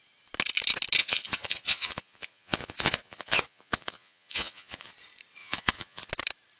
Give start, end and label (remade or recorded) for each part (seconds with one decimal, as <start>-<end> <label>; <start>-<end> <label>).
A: 0.0-1.0 recorded; 1.0-4.9 remade; 4.9-5.4 recorded; 5.4-6.1 remade; 6.1-6.6 recorded

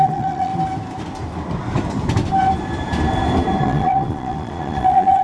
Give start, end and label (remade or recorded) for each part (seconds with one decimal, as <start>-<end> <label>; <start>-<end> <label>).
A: 0.0-0.5 remade; 0.5-3.6 recorded; 3.6-5.2 remade

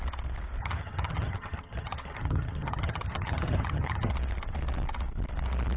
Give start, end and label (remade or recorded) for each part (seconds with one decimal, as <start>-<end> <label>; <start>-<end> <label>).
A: 0.0-0.6 recorded; 0.6-4.1 remade; 4.1-5.8 recorded